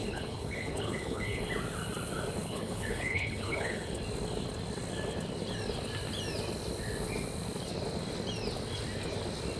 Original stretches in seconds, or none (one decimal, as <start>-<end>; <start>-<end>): 1.4-2.4; 4.0-9.6